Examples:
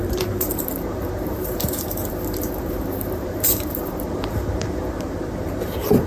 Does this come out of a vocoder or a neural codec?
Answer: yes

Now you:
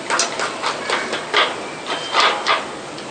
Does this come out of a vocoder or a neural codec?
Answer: no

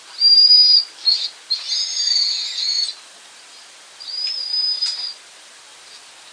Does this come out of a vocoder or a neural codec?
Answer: no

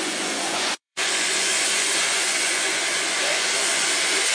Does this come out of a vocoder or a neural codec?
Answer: yes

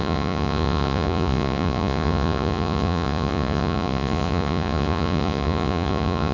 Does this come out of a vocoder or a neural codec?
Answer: yes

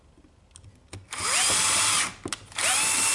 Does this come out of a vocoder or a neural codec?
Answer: no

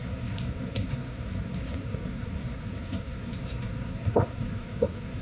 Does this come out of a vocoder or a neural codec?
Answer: yes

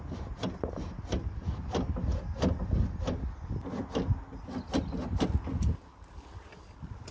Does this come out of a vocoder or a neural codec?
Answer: no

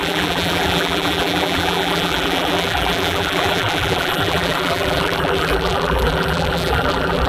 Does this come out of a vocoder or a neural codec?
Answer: yes